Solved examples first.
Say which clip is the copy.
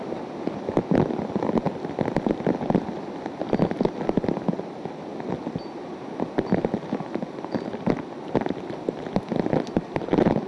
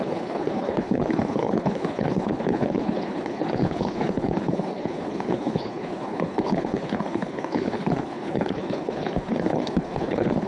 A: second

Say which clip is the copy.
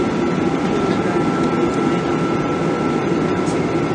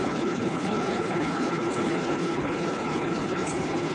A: second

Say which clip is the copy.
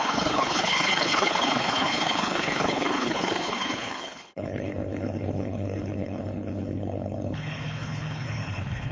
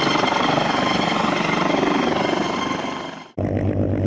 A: first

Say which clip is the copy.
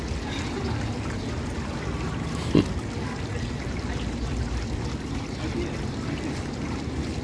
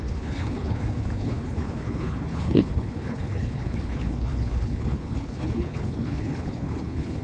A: second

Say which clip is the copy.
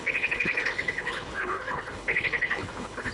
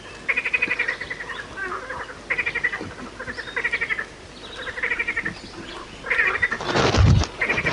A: first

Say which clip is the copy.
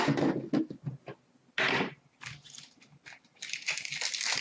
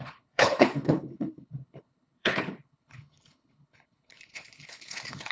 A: second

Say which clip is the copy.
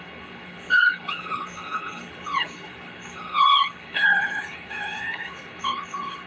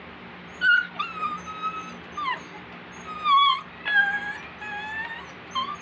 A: first